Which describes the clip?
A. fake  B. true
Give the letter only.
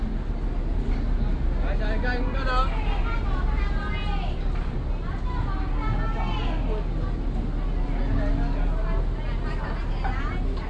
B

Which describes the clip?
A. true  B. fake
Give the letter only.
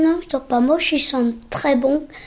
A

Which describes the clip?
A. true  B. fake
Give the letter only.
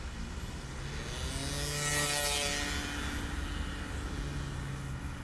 A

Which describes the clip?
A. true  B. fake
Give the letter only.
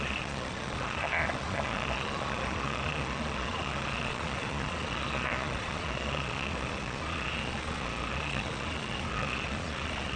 B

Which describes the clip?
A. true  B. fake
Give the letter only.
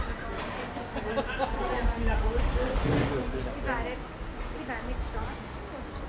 A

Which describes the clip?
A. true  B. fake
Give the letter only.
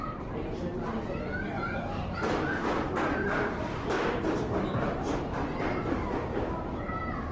B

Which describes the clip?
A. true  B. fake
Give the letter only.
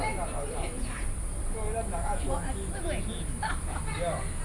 A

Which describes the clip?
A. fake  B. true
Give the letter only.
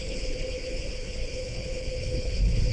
A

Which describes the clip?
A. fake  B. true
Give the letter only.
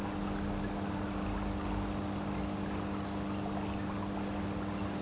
B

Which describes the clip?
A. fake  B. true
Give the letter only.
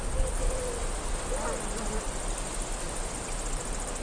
B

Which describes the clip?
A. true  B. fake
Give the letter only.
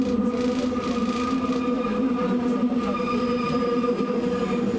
A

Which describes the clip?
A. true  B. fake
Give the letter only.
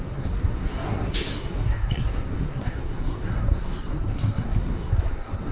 B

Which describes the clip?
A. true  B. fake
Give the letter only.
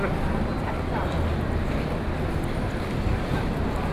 A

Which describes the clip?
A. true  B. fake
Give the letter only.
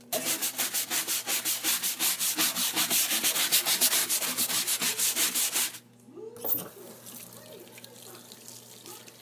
A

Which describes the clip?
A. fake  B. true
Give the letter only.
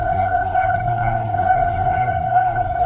A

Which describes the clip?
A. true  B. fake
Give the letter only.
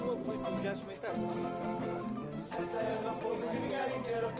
A